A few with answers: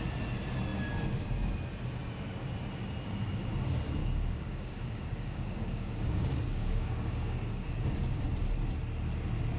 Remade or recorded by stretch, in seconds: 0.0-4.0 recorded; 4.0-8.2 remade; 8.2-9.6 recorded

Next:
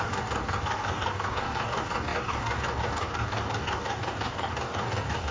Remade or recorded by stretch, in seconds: 0.0-5.3 remade

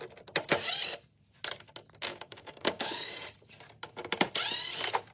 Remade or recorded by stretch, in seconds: 0.0-2.1 recorded; 2.1-3.1 remade; 3.1-5.1 recorded

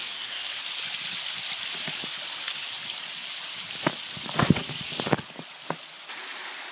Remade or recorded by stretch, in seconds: 0.0-0.5 remade; 0.5-6.7 recorded

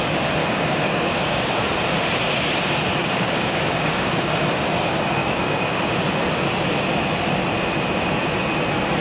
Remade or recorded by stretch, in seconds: 0.0-0.4 recorded; 0.4-1.5 remade; 1.5-3.0 recorded; 3.0-4.7 remade; 4.7-5.2 recorded; 5.2-5.9 remade; 5.9-9.0 recorded

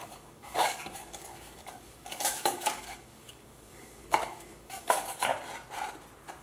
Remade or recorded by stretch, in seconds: 0.0-5.3 remade; 5.3-6.4 recorded

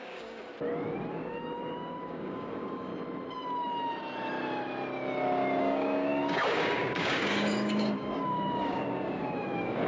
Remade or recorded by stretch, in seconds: 0.0-0.5 remade; 0.5-1.1 recorded; 1.1-2.9 remade; 2.9-5.6 recorded; 5.6-9.9 remade

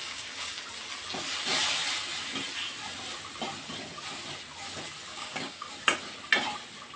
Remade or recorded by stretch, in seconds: 0.0-0.6 remade; 0.6-5.1 recorded; 5.1-5.7 remade; 5.7-7.0 recorded